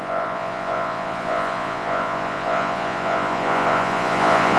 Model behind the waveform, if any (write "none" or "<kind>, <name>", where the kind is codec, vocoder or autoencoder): vocoder, Vocos